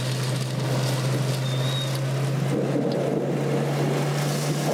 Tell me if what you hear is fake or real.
real